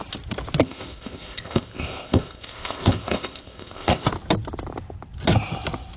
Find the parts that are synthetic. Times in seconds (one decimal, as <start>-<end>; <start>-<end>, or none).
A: 0.6-4.1